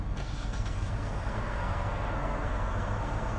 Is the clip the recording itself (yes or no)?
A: no